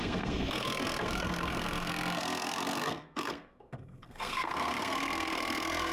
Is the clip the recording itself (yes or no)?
no